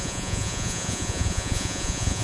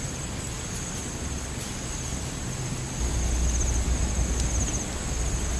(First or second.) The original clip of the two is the second